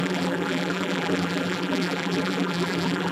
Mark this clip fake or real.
fake